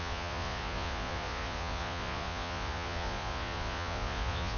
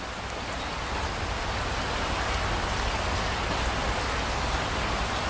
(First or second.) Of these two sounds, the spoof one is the first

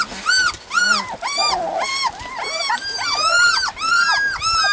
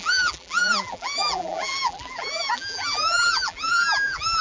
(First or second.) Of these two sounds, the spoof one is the second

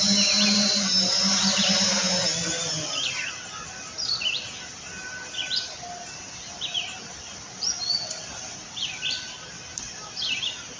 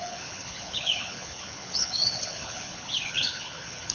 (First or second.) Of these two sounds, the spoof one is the second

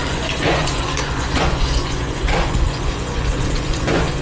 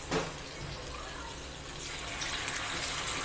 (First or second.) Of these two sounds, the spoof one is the first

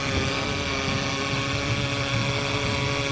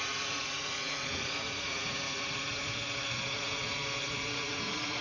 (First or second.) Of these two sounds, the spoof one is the second